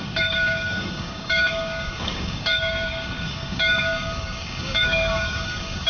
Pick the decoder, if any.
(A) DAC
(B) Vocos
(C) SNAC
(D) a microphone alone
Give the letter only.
A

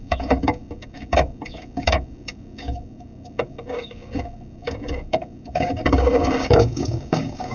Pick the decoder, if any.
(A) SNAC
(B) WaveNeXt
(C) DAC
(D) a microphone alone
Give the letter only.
C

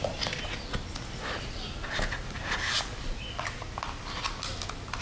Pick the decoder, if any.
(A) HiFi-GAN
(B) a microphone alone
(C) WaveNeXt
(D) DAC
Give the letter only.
B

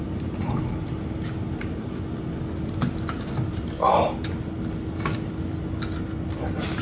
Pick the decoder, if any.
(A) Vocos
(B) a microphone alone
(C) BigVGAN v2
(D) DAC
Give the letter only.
B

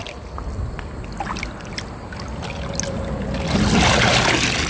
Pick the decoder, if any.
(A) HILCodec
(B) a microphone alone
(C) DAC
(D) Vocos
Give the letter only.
B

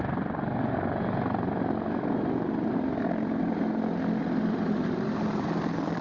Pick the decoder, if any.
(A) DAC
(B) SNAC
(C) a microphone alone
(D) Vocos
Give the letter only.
C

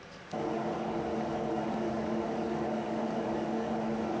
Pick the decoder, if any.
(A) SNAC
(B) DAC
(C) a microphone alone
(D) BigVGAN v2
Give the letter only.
B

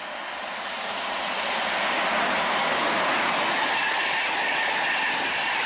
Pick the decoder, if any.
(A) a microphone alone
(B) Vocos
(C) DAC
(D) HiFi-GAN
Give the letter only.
A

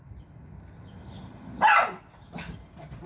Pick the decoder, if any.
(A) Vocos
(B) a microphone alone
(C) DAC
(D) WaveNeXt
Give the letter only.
B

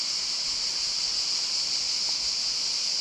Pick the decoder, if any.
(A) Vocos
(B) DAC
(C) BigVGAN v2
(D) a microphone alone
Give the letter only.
D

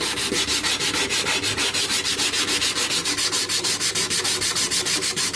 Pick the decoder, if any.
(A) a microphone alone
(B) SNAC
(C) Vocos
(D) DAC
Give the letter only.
A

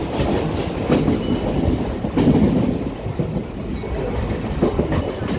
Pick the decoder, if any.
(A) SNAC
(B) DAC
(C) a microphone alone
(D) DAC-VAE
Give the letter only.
C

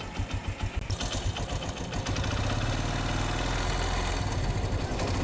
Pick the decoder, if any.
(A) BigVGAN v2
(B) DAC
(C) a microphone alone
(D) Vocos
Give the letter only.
C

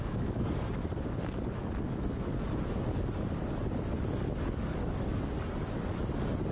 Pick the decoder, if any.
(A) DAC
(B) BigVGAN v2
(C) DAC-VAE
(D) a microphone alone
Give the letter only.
A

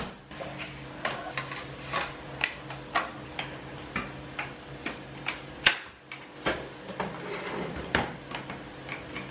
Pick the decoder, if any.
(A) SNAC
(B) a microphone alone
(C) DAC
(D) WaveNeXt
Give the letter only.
B